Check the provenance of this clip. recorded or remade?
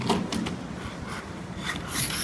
recorded